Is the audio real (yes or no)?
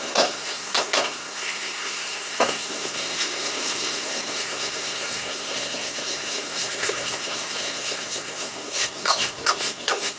no